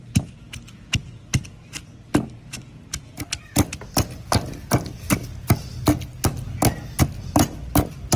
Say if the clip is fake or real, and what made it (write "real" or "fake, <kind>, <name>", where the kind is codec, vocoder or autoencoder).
real